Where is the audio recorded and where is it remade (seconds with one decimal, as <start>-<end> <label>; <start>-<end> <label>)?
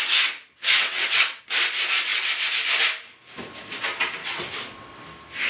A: 0.0-0.6 recorded; 0.6-1.4 remade; 1.4-4.2 recorded; 4.2-5.0 remade; 5.0-5.5 recorded